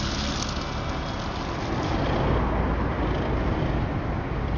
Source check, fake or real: real